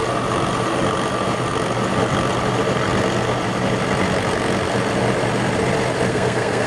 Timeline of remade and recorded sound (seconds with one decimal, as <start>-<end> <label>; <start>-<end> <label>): 0.0-6.1 recorded; 6.1-6.7 remade